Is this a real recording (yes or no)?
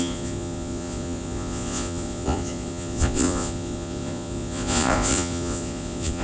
no